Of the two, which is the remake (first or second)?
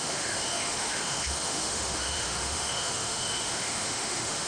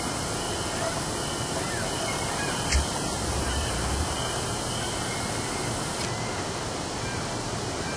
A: first